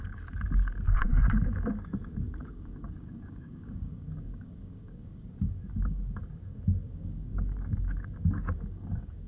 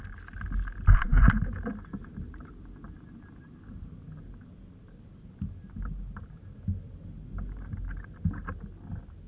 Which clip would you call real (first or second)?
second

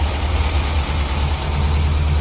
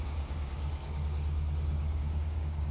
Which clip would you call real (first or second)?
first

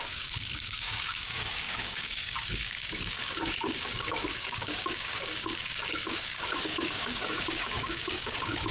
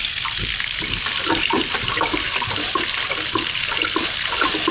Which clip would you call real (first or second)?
second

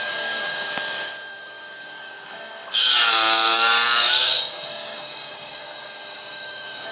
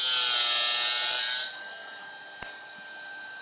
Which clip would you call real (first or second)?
second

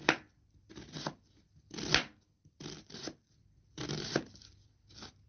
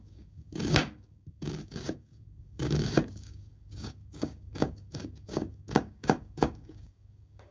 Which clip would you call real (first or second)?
first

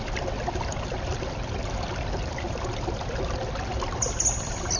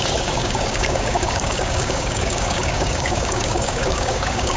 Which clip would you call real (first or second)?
first